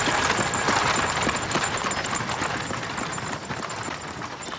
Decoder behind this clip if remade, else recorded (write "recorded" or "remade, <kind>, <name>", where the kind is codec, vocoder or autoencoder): recorded